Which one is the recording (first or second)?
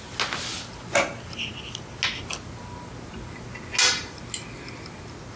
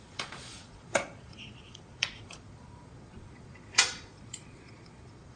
first